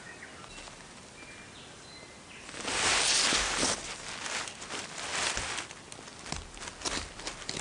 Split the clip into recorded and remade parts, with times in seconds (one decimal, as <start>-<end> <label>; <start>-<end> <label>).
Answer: 0.0-7.6 recorded